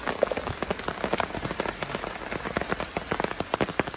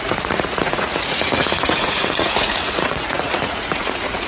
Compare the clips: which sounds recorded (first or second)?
first